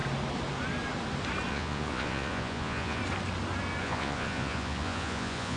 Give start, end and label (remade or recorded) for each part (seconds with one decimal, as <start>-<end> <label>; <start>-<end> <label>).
0.0-1.5 recorded; 1.5-3.0 remade; 3.0-3.8 recorded; 3.8-5.6 remade